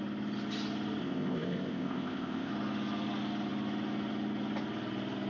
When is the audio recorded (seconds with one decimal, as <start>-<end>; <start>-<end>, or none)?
0.0-1.0; 2.5-5.3